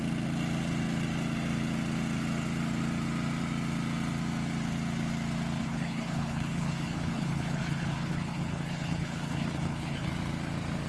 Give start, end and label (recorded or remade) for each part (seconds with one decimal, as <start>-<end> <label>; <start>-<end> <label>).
0.0-5.6 recorded; 5.6-10.1 remade; 10.1-10.9 recorded